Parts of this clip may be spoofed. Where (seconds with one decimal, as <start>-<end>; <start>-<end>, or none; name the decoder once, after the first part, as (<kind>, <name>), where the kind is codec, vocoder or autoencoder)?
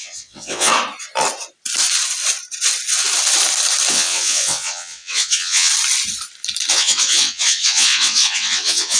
0.0-0.7 (vocoder, WaveNeXt); 3.9-5.7; 6.7-9.0